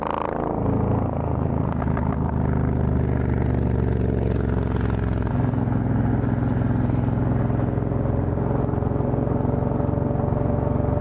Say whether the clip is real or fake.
real